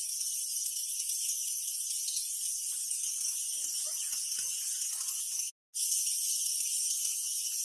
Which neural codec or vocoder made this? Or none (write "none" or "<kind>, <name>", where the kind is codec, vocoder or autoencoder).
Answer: none